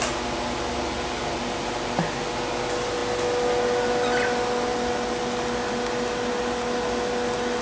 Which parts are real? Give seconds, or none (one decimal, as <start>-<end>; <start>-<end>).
0.0-7.6